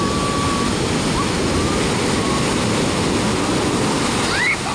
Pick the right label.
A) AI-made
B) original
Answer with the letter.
B